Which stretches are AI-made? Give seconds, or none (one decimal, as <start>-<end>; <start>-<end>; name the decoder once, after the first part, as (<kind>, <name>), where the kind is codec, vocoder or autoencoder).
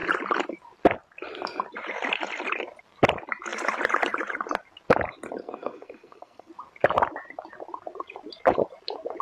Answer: 5.4-6.5 (codec, SNAC)